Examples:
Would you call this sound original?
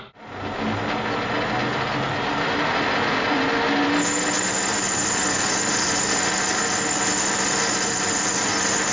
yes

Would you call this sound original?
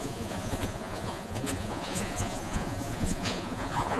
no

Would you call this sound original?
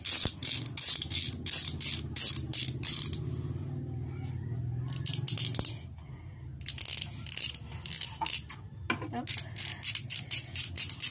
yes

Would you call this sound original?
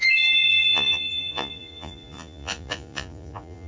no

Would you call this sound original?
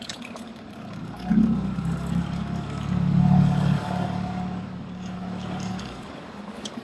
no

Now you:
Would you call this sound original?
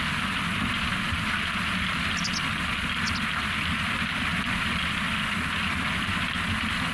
yes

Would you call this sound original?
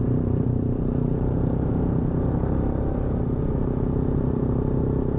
no